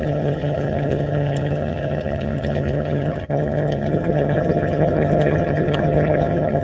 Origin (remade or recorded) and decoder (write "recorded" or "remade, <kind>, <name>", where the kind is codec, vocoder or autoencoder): remade, vocoder, HiFi-GAN